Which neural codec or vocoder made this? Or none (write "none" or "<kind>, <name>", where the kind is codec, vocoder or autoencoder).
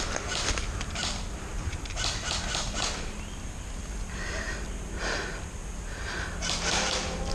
none